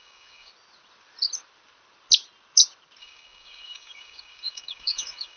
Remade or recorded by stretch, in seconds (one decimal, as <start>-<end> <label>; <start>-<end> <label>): 0.0-0.5 remade; 0.5-3.0 recorded; 3.0-5.4 remade